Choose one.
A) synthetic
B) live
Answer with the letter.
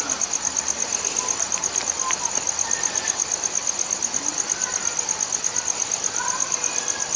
B